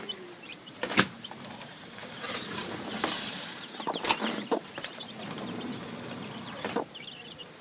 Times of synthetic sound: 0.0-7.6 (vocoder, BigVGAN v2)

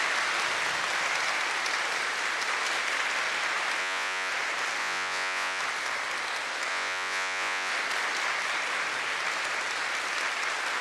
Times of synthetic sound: 3.8-4.3 (vocoder, Vocos); 4.8-5.6; 6.7-7.7

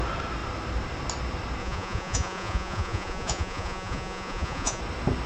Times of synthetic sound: 1.6-4.8 (vocoder, Vocos)

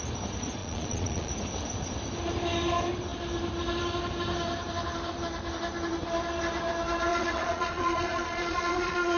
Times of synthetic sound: 0.6-1.3 (vocoder, Vocos); 7.1-9.2